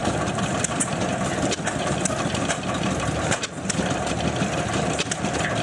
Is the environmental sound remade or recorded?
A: recorded